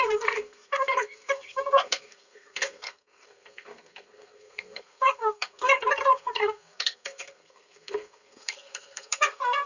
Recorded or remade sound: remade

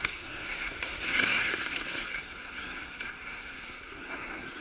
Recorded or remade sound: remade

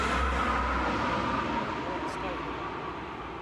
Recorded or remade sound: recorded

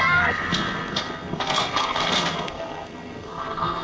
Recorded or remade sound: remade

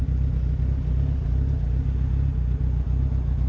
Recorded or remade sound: recorded